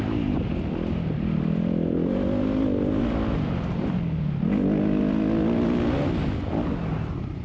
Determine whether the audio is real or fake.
real